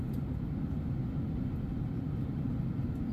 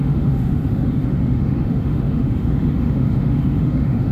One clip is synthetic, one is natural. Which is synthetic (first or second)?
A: second